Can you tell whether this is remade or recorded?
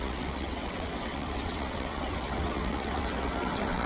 remade